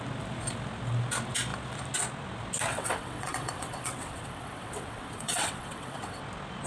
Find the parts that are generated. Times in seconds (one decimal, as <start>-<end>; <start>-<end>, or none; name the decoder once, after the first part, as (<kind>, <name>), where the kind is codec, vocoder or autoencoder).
2.7-6.2 (vocoder, WaveNeXt)